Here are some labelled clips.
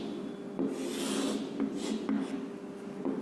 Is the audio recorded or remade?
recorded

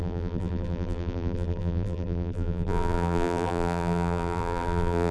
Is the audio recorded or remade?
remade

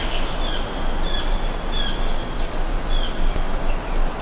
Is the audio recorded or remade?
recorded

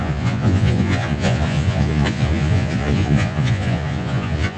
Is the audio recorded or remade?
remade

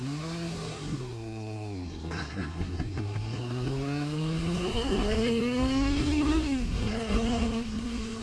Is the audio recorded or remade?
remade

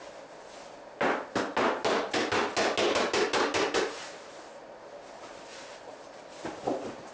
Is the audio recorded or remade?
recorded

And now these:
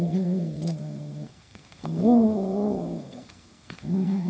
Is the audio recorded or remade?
remade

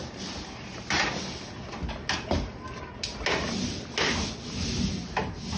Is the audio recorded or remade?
recorded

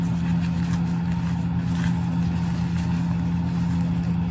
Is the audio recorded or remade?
recorded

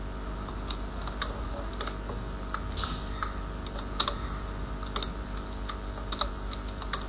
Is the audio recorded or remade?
recorded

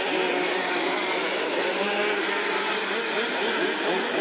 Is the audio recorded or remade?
recorded